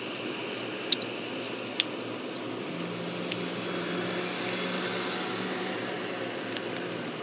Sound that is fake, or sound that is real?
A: real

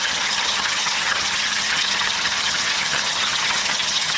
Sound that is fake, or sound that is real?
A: fake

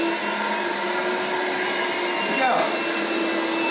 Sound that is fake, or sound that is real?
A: real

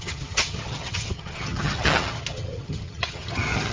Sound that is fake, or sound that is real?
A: fake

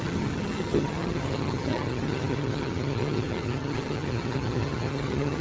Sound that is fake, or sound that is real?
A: fake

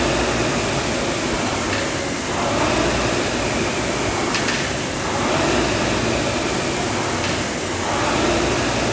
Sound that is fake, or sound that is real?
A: real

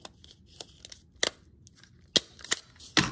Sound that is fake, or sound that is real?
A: real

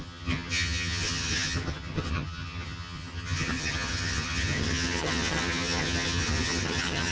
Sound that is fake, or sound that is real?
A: fake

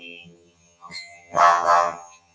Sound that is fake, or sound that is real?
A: fake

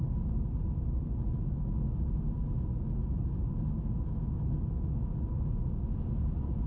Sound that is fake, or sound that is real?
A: real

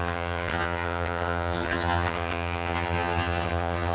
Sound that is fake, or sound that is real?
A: fake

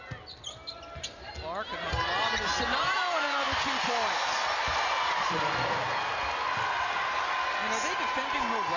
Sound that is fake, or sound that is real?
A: real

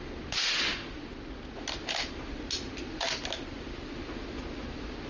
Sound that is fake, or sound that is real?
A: real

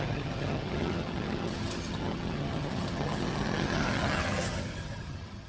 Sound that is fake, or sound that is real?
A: fake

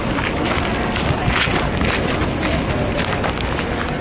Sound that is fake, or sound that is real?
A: real